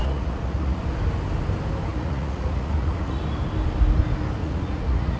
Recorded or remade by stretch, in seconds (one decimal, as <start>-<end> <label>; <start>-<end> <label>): 0.0-0.8 remade; 0.8-1.9 recorded; 1.9-3.2 remade; 3.2-4.4 recorded; 4.4-5.2 remade